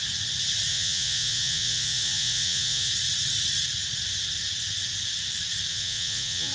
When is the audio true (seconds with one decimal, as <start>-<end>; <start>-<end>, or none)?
0.0-0.7; 2.9-5.7